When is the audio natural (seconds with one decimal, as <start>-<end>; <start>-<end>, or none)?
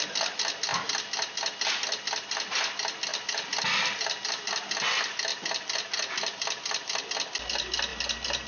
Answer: 0.0-3.1; 4.3-5.3; 7.0-8.5